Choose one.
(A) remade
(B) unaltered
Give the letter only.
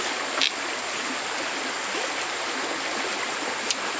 B